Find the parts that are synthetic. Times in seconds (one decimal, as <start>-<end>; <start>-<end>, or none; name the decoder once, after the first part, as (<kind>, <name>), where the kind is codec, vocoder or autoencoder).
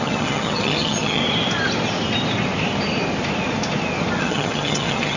0.0-1.2 (vocoder, HiFi-GAN); 4.2-5.2